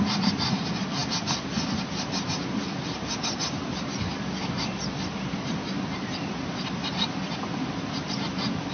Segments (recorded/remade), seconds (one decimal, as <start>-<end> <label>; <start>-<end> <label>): 0.0-8.7 recorded